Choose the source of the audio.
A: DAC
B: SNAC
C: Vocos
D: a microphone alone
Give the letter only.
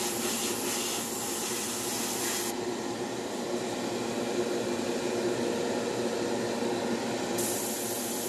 D